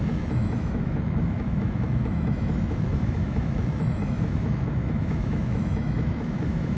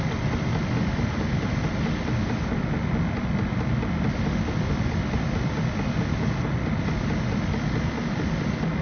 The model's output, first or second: first